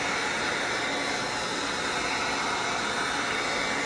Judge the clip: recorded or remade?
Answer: recorded